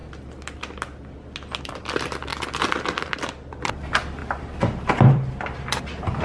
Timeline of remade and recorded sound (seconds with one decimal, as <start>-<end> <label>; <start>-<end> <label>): 0.0-1.6 recorded; 1.6-2.3 remade; 2.3-3.5 recorded; 3.5-4.2 remade; 4.2-4.8 recorded; 4.8-6.2 remade